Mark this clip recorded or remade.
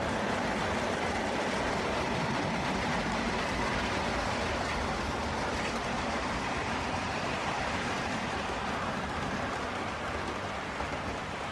recorded